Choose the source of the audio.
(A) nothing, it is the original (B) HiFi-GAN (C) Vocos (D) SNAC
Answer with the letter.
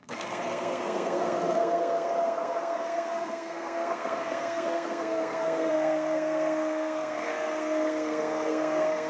D